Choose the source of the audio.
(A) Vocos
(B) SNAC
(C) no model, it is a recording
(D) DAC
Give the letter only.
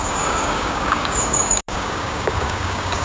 D